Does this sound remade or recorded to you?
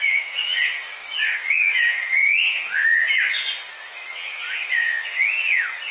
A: remade